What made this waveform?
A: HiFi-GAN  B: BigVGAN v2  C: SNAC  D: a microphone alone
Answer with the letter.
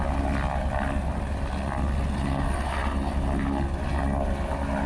D